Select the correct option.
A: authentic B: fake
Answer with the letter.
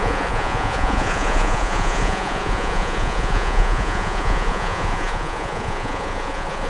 B